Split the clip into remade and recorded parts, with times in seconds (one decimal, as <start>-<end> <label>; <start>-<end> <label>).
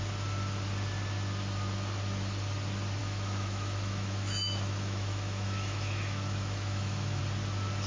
0.0-3.0 recorded; 3.0-7.2 remade; 7.2-7.9 recorded